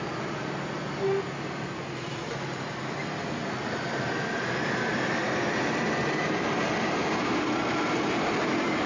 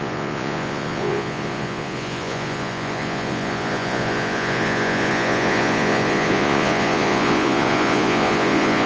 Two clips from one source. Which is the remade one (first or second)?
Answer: second